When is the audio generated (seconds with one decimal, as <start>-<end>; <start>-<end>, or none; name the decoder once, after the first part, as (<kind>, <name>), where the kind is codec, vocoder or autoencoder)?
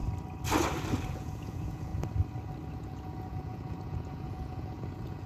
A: 1.1-1.9 (vocoder, Vocos); 2.7-5.3